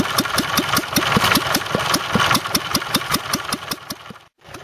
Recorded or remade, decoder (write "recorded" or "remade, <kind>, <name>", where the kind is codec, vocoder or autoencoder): recorded